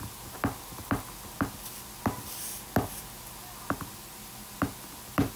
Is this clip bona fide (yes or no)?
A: yes